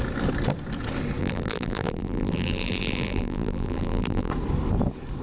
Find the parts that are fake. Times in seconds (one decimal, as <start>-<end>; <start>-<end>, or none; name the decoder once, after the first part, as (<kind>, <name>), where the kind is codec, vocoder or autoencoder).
1.2-4.3 (vocoder, BigVGAN v2)